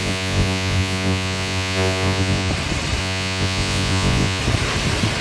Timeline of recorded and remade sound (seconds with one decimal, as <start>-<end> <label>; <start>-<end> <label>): 0.0-2.5 remade; 2.5-3.0 recorded; 3.0-4.4 remade; 4.4-5.2 recorded